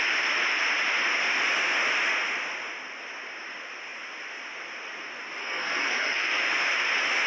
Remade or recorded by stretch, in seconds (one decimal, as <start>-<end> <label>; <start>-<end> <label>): 0.0-5.4 recorded; 5.4-6.4 remade; 6.4-7.3 recorded